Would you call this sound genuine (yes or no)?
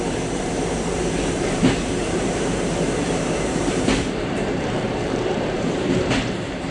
no